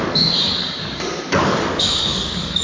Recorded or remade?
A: remade